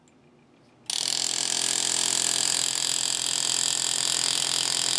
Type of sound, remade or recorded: recorded